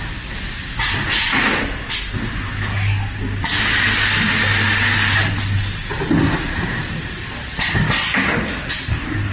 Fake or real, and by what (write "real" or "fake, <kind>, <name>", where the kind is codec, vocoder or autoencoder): real